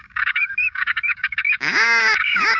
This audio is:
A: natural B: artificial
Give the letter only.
B